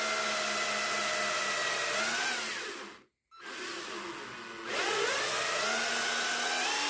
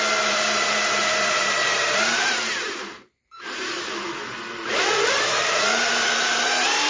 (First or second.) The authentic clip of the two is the first